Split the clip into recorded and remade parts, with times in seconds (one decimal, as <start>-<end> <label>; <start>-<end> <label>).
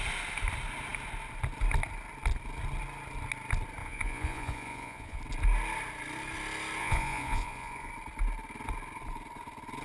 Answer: 0.0-3.8 recorded; 3.8-5.2 remade; 5.2-6.8 recorded; 6.8-7.9 remade; 7.9-9.8 recorded